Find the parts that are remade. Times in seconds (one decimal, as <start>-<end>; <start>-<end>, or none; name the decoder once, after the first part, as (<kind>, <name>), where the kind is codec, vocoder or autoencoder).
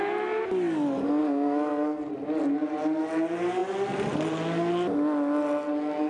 1.2-2.1 (codec, SNAC)